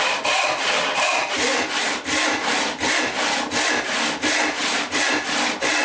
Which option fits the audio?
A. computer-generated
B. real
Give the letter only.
B